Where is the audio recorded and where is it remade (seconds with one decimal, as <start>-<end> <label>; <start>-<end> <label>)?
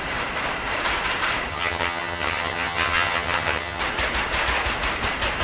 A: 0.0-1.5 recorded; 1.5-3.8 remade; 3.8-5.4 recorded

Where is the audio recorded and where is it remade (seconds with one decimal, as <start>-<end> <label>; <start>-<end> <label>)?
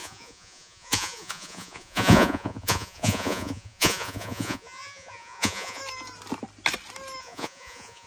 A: 0.0-5.8 remade; 5.8-7.2 recorded; 7.2-8.1 remade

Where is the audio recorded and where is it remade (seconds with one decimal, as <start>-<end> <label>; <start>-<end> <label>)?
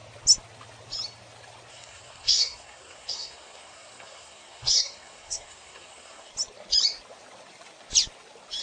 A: 0.0-1.7 recorded; 1.7-6.3 remade; 6.3-8.6 recorded